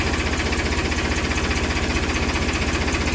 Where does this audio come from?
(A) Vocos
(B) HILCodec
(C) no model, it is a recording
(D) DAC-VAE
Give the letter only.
C